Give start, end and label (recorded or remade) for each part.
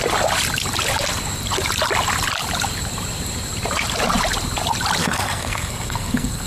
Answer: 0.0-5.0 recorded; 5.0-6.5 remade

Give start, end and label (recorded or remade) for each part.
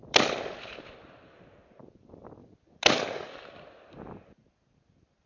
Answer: 0.0-1.4 remade; 1.4-5.3 recorded